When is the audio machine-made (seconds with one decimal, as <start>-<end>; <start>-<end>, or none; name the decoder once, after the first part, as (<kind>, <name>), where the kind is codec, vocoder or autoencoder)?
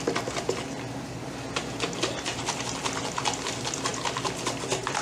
none